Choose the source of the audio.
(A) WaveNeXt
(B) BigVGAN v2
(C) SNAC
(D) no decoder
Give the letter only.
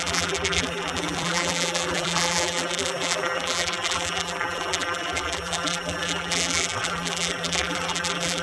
B